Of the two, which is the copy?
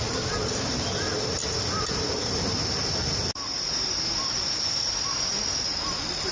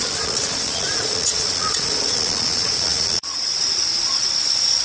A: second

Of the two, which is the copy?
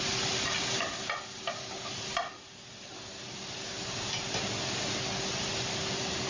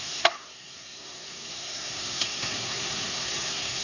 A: second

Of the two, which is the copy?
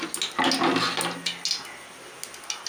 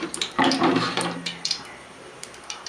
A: second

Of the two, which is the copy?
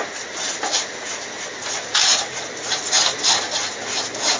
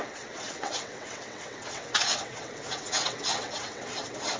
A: second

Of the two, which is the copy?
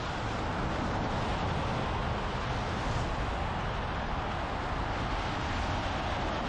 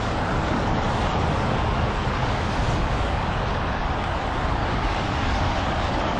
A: second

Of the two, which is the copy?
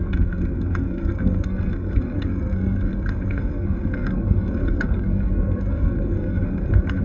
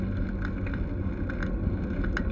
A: first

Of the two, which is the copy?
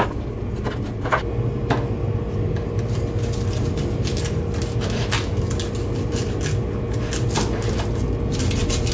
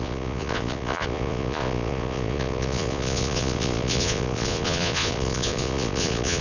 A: second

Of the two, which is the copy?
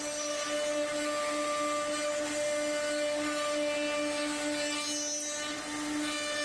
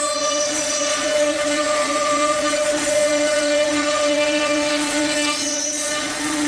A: second